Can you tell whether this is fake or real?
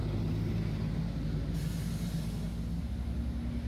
real